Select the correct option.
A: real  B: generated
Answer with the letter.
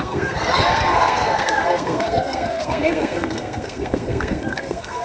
B